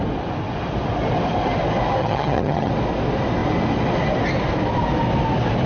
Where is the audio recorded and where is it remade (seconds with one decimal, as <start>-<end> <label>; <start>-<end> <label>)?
0.0-2.0 recorded; 2.0-2.7 remade; 2.7-5.7 recorded